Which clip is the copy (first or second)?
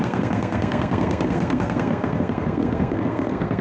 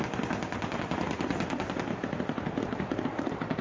first